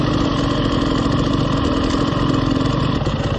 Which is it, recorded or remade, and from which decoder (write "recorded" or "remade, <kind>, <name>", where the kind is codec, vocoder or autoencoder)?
recorded